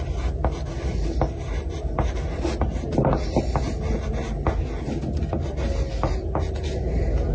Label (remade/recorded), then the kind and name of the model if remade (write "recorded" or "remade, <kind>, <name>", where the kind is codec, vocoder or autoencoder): recorded